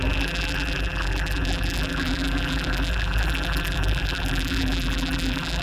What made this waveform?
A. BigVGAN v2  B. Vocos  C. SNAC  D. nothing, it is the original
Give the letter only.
A